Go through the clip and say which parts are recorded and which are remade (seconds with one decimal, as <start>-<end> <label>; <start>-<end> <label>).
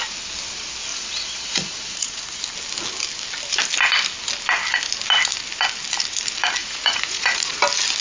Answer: 0.0-0.9 recorded; 0.9-2.4 remade; 2.4-6.6 recorded; 6.6-7.6 remade; 7.6-8.0 recorded